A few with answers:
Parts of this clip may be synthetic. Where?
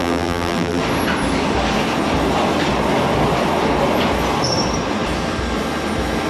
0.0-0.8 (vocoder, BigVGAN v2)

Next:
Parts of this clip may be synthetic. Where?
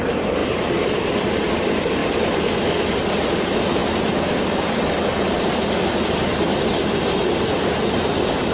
0.4-1.4 (vocoder, BigVGAN v2); 7.2-8.1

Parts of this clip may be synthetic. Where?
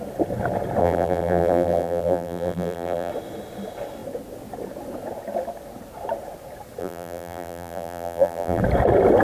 0.8-3.1 (vocoder, BigVGAN v2); 6.8-8.6